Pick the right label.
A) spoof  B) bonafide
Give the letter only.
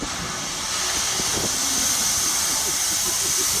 B